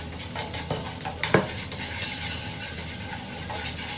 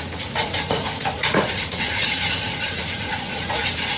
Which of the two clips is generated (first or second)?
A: second